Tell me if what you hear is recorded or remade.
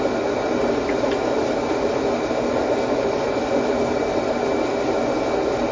recorded